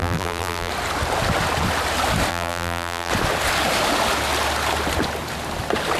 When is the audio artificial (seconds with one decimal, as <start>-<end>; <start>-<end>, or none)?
0.0-0.7; 2.3-3.1